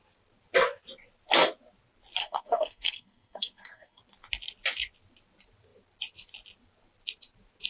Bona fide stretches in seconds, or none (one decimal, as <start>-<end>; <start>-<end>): 0.0-2.2; 4.0-7.7